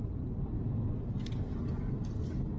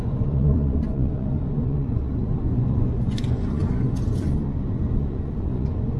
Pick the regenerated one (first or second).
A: second